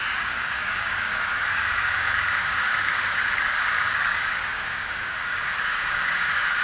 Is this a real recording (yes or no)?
no